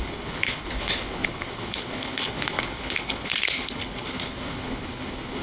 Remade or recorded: remade